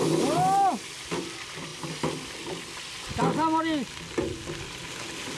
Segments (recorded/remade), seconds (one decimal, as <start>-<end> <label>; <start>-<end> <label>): 0.0-5.4 recorded